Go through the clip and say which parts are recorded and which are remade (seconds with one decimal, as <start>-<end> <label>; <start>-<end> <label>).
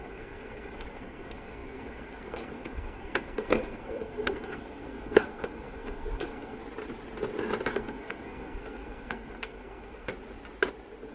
0.0-6.6 remade; 6.6-7.7 recorded; 7.7-10.1 remade; 10.1-11.1 recorded